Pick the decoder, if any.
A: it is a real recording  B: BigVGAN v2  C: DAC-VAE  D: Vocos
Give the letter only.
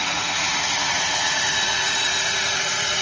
D